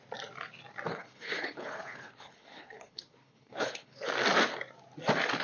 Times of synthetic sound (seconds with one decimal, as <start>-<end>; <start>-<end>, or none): 0.9-4.1